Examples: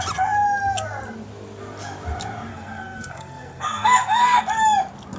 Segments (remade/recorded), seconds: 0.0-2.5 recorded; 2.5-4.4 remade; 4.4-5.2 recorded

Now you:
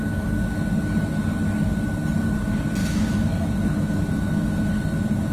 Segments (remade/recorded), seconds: 0.0-2.8 recorded; 2.8-4.7 remade; 4.7-5.3 recorded

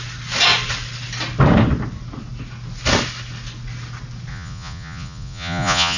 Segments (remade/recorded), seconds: 0.0-4.3 recorded; 4.3-6.0 remade

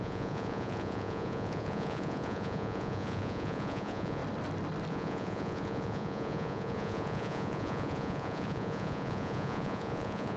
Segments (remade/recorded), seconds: 0.0-4.2 remade; 4.2-4.9 recorded; 4.9-10.4 remade

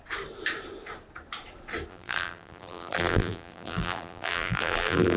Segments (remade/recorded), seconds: 0.0-1.9 recorded; 1.9-5.2 remade

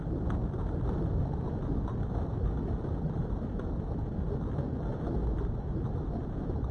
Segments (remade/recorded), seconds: 0.0-6.7 recorded

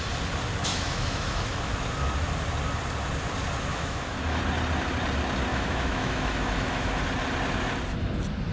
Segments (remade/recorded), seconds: 0.0-0.7 recorded; 0.7-1.7 remade; 1.7-3.7 recorded; 3.7-4.4 remade; 4.4-5.5 recorded; 5.5-7.0 remade; 7.0-8.5 recorded